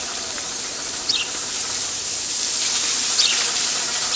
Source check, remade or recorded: recorded